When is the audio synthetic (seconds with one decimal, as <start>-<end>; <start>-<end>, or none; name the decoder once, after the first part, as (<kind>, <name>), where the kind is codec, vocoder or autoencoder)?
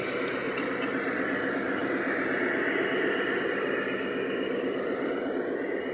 none